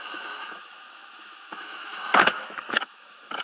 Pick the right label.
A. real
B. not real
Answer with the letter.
B